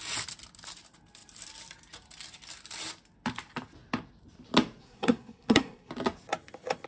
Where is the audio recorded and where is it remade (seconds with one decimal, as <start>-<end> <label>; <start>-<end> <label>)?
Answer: 0.0-4.8 recorded; 4.8-5.9 remade; 5.9-6.9 recorded